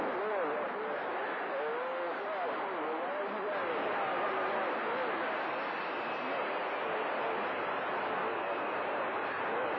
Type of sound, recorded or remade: recorded